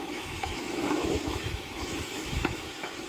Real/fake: fake